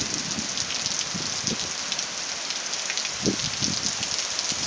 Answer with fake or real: real